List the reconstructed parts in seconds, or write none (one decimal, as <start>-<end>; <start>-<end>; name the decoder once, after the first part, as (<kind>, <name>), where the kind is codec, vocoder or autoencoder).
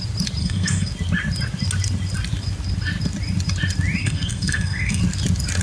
0.4-0.9 (codec, SNAC); 4.0-5.0